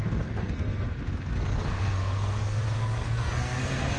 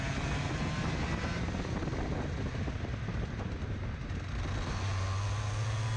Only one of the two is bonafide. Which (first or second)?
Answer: second